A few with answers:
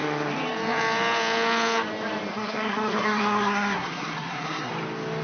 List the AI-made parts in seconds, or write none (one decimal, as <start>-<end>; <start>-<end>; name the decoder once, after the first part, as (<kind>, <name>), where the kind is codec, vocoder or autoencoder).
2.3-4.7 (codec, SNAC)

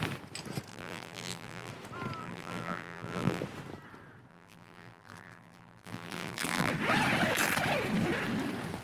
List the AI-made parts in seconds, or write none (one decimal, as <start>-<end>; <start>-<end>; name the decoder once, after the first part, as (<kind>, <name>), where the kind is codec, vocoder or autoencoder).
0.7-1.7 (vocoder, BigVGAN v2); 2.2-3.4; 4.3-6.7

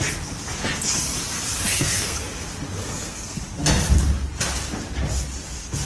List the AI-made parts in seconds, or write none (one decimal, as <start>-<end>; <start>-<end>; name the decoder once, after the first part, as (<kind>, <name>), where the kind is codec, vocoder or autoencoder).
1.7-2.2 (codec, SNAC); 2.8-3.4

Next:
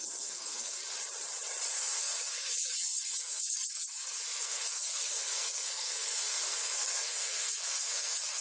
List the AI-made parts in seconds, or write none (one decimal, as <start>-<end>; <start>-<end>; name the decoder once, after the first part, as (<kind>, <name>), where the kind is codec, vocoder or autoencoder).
0.0-0.8 (codec, SNAC); 1.7-8.4

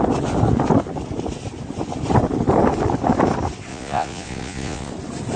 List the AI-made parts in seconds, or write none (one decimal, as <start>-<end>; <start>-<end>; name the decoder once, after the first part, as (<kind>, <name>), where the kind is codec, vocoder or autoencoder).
3.7-4.9 (vocoder, Vocos)

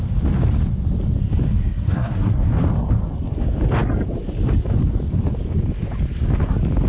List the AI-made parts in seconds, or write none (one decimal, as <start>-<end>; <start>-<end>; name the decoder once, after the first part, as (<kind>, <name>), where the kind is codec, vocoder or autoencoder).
1.6-2.5 (codec, SNAC)

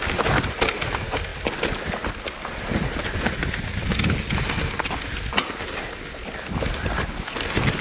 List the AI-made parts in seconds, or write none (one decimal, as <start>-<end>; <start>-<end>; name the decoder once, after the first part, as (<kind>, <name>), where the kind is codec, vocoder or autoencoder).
none

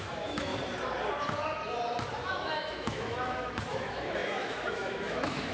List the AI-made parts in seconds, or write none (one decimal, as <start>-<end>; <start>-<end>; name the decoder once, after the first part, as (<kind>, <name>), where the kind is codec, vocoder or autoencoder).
0.0-0.5 (autoencoder, DAC-VAE); 2.3-5.5